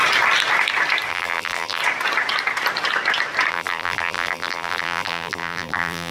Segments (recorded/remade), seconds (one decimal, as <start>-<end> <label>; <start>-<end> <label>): 0.0-1.1 recorded; 1.1-1.8 remade; 1.8-3.5 recorded; 3.5-6.1 remade